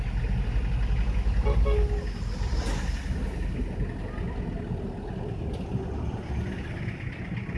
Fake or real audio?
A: real